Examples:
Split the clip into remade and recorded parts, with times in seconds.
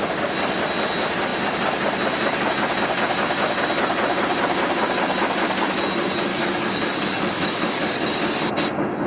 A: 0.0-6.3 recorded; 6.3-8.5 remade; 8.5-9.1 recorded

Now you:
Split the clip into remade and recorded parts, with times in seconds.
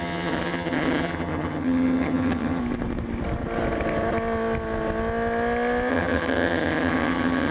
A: 0.0-2.6 remade; 2.6-5.9 recorded; 5.9-7.5 remade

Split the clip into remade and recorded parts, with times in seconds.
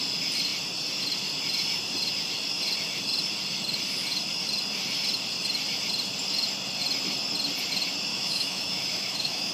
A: 0.0-8.1 recorded; 8.1-9.5 remade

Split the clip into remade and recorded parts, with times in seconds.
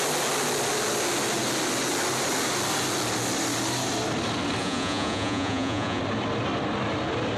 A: 0.0-4.6 recorded; 4.6-6.0 remade; 6.0-7.4 recorded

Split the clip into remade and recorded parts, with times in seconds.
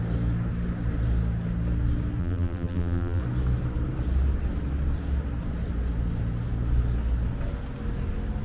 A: 0.0-2.2 recorded; 2.2-3.2 remade; 3.2-8.4 recorded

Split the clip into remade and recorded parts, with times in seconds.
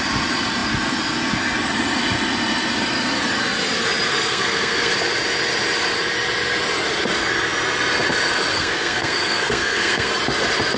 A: 0.0-4.1 recorded; 4.1-4.9 remade; 4.9-8.5 recorded; 8.5-10.1 remade; 10.1-10.8 recorded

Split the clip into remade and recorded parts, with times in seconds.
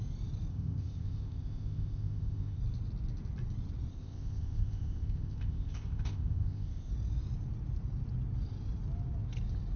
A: 0.0-0.5 recorded; 0.5-2.6 remade; 2.6-3.9 recorded; 3.9-6.9 remade; 6.9-9.8 recorded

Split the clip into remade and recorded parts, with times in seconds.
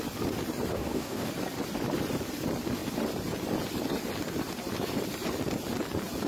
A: 0.0-0.7 recorded; 0.7-1.3 remade; 1.3-6.3 recorded